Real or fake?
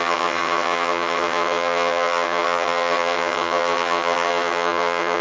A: fake